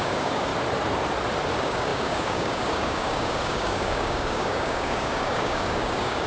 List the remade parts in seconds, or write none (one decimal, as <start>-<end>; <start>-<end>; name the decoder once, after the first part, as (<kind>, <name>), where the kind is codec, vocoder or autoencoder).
0.0-0.5 (codec, DAC); 1.5-6.3